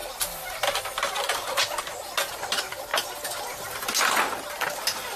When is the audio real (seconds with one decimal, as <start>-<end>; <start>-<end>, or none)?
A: 0.0-5.2